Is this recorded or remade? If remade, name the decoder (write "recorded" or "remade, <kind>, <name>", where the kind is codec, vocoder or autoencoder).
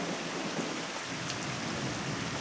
recorded